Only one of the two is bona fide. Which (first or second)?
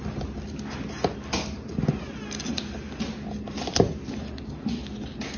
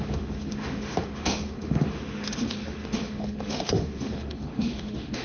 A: first